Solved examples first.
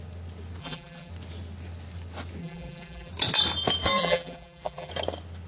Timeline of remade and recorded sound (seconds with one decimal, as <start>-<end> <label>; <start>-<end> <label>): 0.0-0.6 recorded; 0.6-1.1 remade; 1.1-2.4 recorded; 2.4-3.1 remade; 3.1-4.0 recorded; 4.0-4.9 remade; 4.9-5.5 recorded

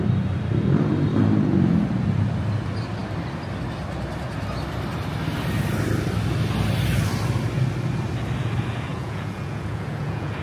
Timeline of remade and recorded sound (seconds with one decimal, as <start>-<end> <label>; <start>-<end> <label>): 0.0-8.9 recorded; 8.9-10.4 remade

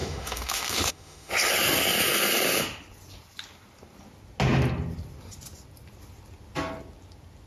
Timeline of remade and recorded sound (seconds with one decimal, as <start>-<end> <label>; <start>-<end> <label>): 0.0-1.3 remade; 1.3-7.5 recorded

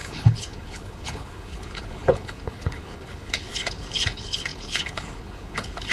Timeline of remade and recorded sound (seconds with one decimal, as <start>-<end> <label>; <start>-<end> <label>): 0.0-5.9 remade